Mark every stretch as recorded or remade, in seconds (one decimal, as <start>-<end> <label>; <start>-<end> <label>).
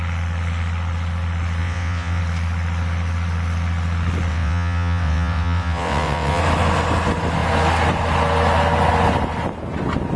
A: 0.0-1.6 recorded; 1.6-2.2 remade; 2.2-4.3 recorded; 4.3-6.4 remade; 6.4-10.2 recorded